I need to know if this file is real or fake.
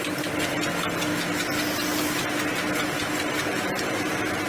real